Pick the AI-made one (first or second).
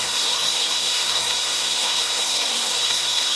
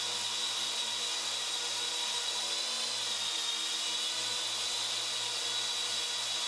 first